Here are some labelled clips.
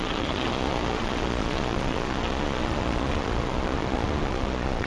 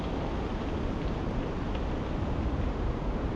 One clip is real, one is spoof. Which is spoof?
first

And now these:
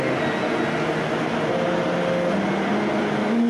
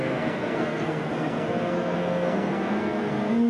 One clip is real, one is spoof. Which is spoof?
second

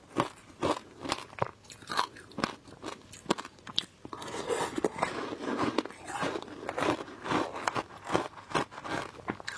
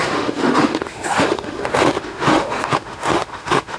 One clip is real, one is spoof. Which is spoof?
second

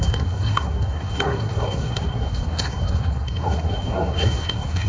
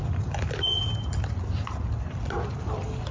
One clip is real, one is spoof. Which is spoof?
first